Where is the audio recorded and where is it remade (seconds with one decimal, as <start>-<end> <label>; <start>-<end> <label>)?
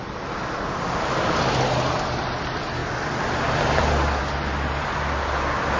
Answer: 0.0-5.8 recorded